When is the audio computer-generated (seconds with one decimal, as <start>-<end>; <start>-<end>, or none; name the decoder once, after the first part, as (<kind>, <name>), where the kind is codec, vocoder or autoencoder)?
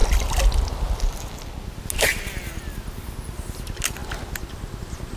none